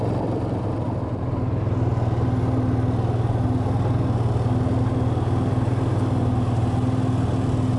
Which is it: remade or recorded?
recorded